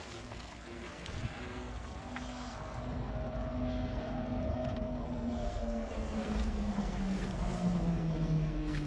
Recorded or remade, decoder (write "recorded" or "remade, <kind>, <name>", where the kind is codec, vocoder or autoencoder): remade, codec, SNAC